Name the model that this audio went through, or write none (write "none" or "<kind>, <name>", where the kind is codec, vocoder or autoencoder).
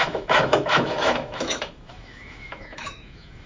autoencoder, DAC-VAE